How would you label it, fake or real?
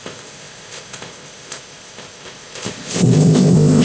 fake